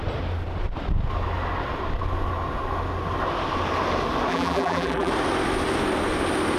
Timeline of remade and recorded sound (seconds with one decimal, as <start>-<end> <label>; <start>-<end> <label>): 0.0-4.3 recorded; 4.3-5.1 remade; 5.1-6.6 recorded